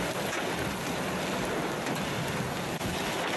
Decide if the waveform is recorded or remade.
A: recorded